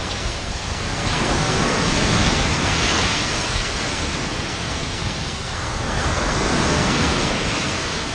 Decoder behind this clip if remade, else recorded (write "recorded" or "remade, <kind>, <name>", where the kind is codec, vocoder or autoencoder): remade, codec, SNAC